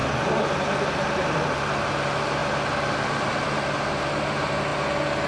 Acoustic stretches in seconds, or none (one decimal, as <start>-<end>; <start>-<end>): 0.0-5.3